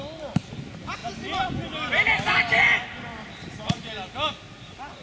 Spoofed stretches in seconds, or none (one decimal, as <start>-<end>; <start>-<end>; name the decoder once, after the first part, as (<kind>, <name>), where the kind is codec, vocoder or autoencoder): none